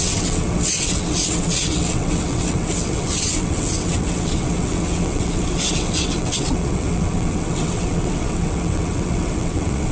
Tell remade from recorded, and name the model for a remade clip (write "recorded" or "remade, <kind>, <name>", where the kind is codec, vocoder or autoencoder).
remade, vocoder, WaveNeXt